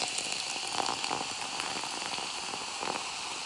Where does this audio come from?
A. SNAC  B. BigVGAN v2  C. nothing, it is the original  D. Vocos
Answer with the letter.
C